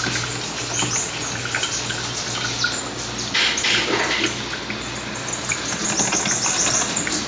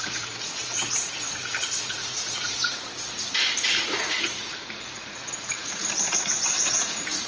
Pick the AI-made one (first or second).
second